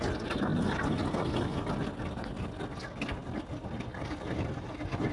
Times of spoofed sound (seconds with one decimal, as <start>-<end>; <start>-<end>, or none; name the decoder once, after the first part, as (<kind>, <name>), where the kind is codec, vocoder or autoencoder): none